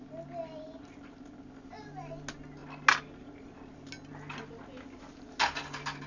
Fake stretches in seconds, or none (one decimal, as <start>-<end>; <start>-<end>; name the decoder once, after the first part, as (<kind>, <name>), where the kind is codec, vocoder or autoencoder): none